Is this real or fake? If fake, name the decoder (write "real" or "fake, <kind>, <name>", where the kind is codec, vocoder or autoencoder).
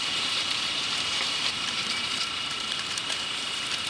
fake, vocoder, BigVGAN v2